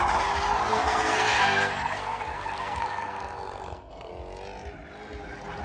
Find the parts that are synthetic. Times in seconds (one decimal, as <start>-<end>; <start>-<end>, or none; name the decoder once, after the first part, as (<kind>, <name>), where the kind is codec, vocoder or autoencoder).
0.7-4.1 (codec, SNAC)